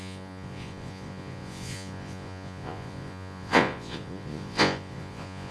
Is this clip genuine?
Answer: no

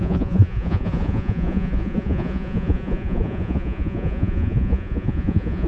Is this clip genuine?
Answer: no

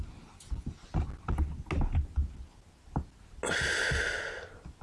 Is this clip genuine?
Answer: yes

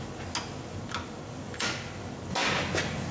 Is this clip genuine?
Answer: yes